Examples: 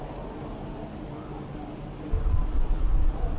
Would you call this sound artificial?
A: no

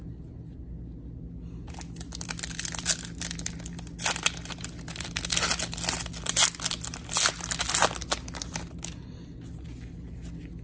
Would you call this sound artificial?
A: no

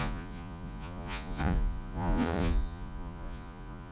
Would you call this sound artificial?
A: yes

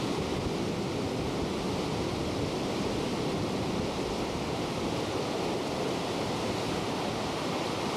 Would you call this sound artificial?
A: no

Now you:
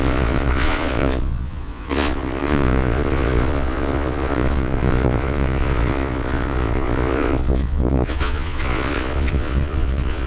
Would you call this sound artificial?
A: yes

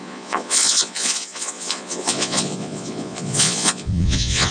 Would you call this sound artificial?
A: yes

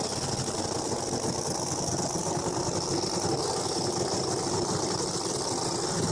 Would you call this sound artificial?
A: no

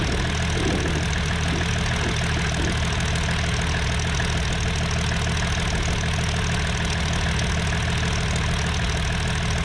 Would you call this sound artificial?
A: no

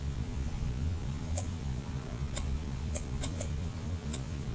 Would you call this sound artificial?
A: yes